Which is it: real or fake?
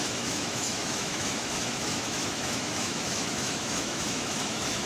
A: fake